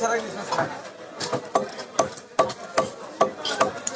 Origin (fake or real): real